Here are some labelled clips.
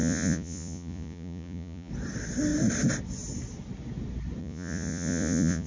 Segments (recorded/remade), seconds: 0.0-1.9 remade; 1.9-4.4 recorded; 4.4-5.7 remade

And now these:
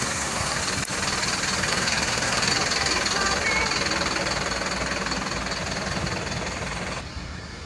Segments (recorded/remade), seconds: 0.0-0.6 remade; 0.6-1.7 recorded; 1.7-2.5 remade; 2.5-7.1 recorded; 7.1-7.7 remade

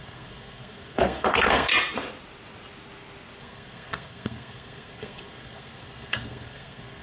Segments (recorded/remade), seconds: 0.0-1.7 remade; 1.7-3.4 recorded; 3.4-7.0 remade

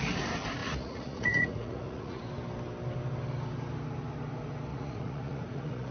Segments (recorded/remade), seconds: 0.0-0.6 recorded; 0.6-2.2 remade; 2.2-4.7 recorded; 4.7-5.9 remade